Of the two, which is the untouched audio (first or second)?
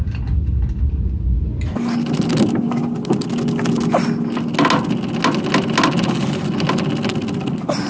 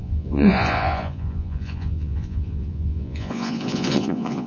first